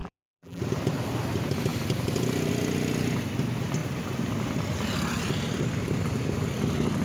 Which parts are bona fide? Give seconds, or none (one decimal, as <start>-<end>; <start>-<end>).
0.6-7.0